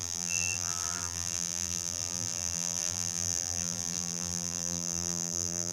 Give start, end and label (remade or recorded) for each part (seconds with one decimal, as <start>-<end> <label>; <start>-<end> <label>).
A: 0.0-5.7 remade